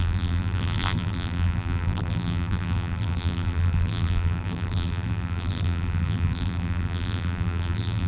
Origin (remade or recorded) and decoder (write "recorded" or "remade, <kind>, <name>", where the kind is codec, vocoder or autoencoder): remade, vocoder, BigVGAN v2